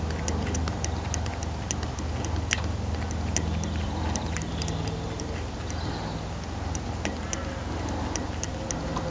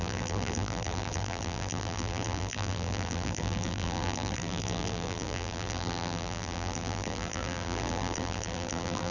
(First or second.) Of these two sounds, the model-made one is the second